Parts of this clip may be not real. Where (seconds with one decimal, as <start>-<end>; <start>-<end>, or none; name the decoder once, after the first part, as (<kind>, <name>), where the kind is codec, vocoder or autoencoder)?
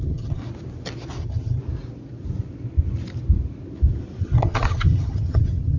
0.0-0.4 (vocoder, HiFi-GAN); 1.2-1.6; 4.2-5.8